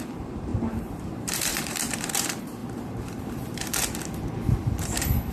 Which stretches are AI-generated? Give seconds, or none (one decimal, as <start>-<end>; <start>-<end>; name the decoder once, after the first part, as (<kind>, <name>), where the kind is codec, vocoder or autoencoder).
0.0-3.7 (vocoder, BigVGAN v2); 4.6-5.3